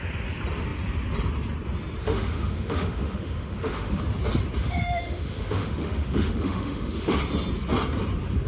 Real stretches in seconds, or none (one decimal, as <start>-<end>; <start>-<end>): 0.0-2.0; 4.0-4.6; 7.2-8.5